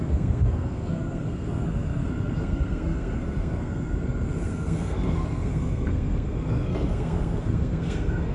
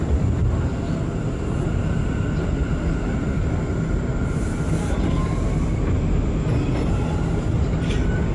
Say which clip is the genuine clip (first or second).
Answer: second